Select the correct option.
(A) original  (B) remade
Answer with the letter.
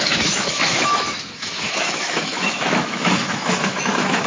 B